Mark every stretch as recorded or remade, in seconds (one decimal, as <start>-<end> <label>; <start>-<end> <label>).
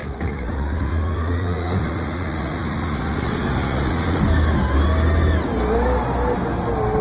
0.0-4.2 remade; 4.2-7.0 recorded